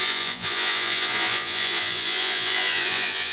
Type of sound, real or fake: fake